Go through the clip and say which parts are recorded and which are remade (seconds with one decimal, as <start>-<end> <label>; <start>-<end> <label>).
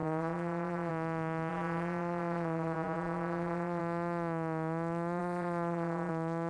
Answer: 0.0-0.9 remade; 0.9-1.5 recorded; 1.5-3.8 remade; 3.8-5.2 recorded; 5.2-6.1 remade; 6.1-6.5 recorded